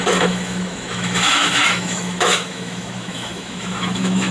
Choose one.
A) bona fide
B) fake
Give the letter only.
B